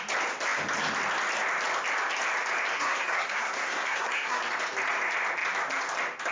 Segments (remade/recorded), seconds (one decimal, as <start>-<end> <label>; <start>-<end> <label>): 0.0-2.7 recorded; 2.7-4.4 remade; 4.4-6.3 recorded